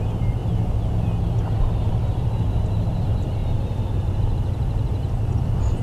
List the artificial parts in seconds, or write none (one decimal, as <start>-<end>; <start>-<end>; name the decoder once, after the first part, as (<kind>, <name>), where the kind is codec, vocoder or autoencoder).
0.0-0.4 (vocoder, BigVGAN v2); 1.8-3.4; 4.0-5.8